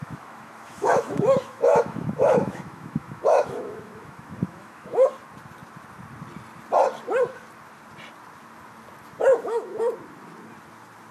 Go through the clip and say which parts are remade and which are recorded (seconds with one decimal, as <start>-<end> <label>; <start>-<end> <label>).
0.0-5.1 remade; 5.1-9.3 recorded; 9.3-9.8 remade; 9.8-11.1 recorded